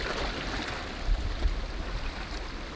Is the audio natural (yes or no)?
yes